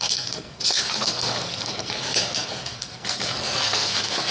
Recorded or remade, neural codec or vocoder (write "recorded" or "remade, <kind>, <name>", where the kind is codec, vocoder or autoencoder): remade, codec, SNAC